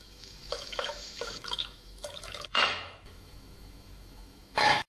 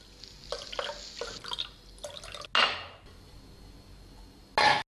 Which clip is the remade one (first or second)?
first